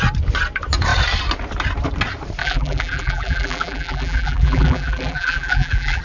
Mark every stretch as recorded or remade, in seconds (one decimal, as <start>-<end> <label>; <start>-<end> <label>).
0.0-2.4 recorded; 2.4-6.0 remade